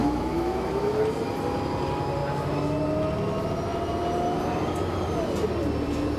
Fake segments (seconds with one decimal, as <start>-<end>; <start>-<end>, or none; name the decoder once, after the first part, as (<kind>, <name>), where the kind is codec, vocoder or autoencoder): 0.0-1.0 (autoencoder, DAC-VAE)